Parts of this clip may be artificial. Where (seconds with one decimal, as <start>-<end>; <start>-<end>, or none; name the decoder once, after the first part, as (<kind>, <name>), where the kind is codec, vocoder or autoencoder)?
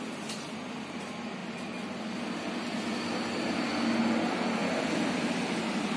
none